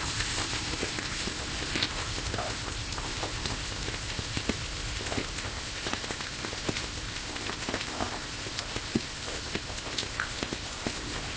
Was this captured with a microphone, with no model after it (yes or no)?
no